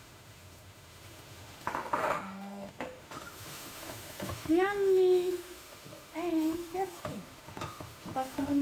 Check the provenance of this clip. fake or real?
fake